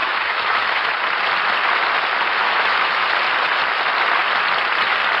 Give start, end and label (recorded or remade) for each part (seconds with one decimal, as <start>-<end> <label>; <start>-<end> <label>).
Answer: 0.0-0.9 remade; 0.9-2.4 recorded; 2.4-3.0 remade; 3.0-5.2 recorded